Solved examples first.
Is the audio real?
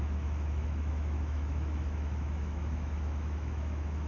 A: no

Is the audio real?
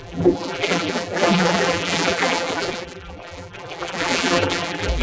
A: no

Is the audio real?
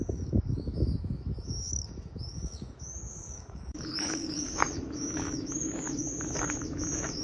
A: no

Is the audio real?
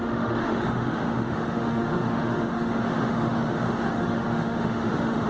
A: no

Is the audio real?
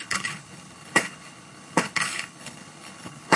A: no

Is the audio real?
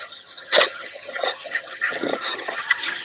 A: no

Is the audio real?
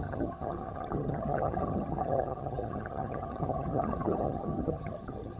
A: no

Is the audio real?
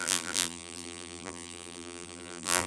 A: no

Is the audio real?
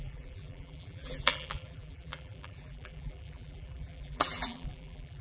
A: no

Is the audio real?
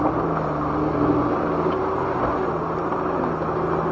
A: yes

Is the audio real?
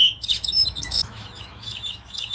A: no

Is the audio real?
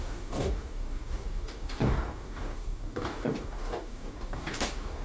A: no